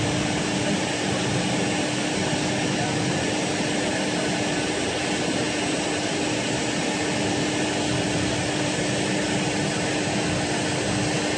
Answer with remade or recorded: recorded